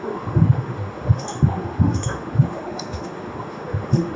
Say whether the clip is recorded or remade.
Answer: remade